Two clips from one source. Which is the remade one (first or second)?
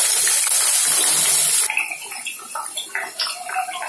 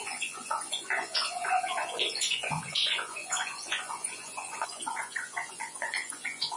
second